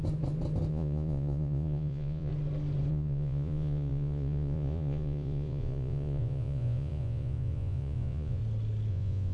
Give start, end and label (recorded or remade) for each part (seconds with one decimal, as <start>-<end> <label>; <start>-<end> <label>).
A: 0.0-0.7 recorded; 0.7-2.3 remade; 2.3-2.9 recorded; 2.9-8.4 remade; 8.4-8.9 recorded; 8.9-9.3 remade